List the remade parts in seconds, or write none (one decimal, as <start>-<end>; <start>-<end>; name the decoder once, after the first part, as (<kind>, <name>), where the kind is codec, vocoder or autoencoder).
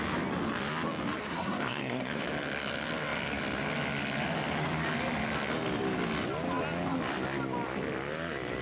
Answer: 1.2-2.2 (codec, SNAC)